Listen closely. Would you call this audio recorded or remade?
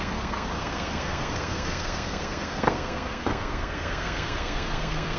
remade